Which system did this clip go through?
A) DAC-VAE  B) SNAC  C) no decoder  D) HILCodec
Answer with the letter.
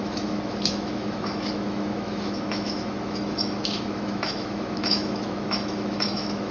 A